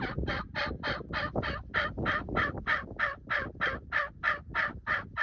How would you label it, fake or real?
real